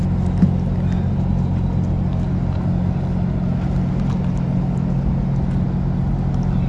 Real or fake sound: real